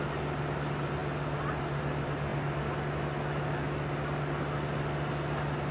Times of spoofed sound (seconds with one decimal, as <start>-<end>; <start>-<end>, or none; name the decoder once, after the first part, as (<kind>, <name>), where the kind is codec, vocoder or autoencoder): none